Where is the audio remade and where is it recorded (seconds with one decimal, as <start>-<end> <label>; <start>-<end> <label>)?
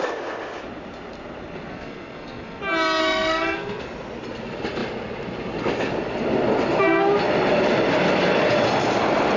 0.0-1.7 recorded; 1.7-2.6 remade; 2.6-3.0 recorded; 3.0-3.8 remade; 3.8-9.4 recorded